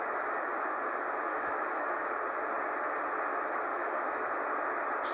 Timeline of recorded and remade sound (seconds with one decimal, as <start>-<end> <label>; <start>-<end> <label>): 0.0-1.3 recorded; 1.3-1.9 remade; 1.9-3.7 recorded; 3.7-4.3 remade; 4.3-5.1 recorded